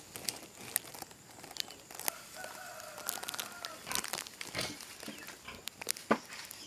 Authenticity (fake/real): real